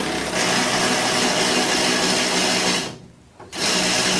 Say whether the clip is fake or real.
real